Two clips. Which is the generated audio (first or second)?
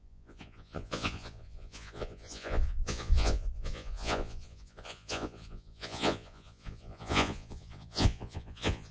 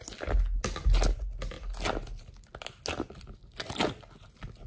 first